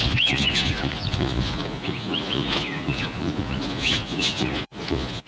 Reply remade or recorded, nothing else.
remade